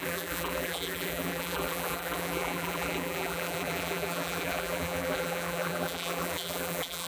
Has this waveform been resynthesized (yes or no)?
yes